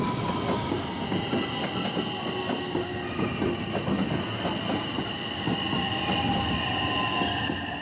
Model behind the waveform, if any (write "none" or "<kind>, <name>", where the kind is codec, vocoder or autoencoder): none